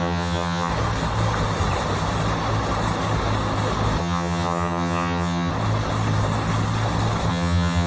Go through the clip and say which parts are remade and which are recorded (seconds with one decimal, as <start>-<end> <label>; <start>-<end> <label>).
0.0-0.7 remade; 0.7-4.0 recorded; 4.0-5.5 remade; 5.5-7.3 recorded; 7.3-7.9 remade